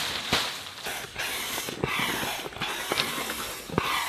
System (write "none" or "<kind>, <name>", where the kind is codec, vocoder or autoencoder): none